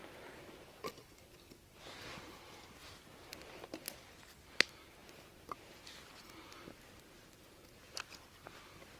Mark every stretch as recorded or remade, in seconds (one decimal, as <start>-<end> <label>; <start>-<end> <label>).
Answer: 0.0-9.0 recorded